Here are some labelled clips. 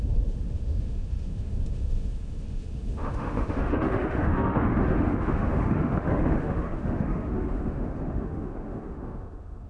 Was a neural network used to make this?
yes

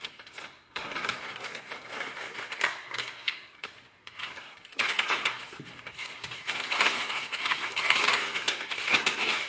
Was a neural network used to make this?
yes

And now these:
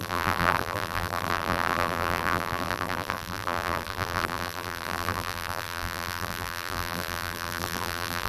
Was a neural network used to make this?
yes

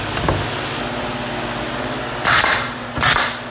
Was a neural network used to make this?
no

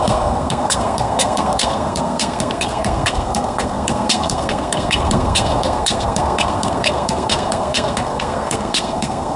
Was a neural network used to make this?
yes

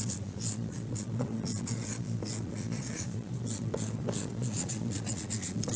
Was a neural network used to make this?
yes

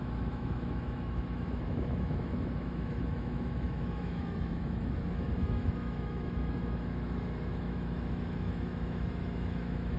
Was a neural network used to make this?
yes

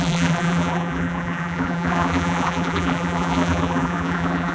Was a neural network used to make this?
yes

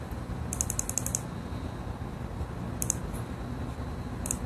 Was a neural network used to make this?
no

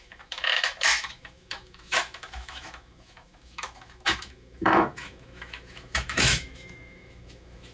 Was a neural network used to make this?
yes